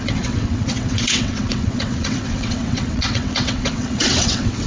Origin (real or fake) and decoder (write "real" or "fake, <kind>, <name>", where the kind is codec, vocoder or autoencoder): fake, vocoder, WaveNeXt